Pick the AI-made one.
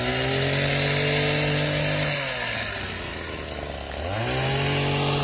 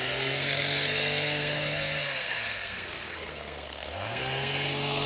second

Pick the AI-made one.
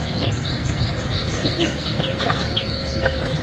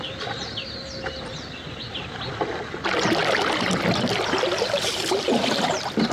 first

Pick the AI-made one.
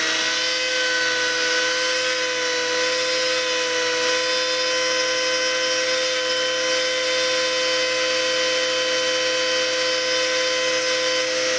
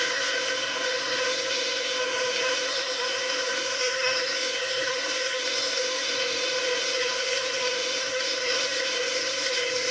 second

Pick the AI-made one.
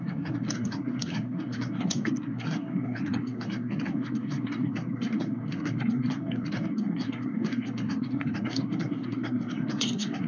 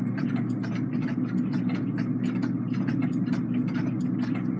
first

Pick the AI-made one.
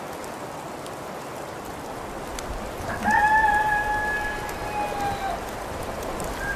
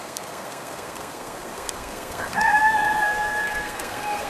second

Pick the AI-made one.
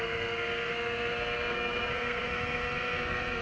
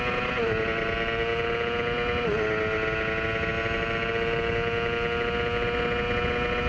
first